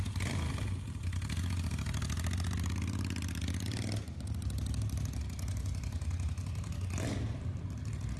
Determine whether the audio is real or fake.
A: real